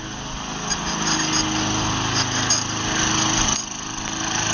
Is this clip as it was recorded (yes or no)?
yes